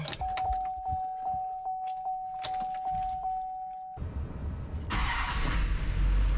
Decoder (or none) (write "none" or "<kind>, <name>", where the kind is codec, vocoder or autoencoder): none